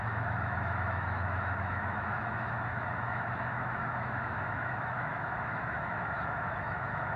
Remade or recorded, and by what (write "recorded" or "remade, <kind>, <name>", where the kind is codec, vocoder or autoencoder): remade, autoencoder, DAC-VAE